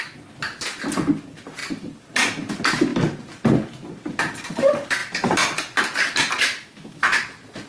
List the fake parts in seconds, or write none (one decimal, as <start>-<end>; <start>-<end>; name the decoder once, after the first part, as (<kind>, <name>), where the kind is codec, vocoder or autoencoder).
6.4-7.2 (autoencoder, DAC-VAE)